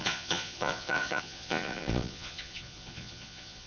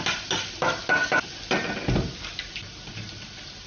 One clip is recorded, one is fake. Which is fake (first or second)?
first